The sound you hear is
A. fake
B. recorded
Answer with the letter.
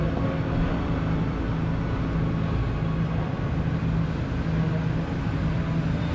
B